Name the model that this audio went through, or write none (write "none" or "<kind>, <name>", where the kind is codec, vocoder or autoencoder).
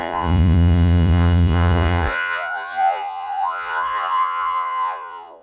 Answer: vocoder, Vocos